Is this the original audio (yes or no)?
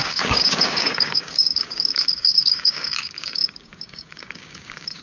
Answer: no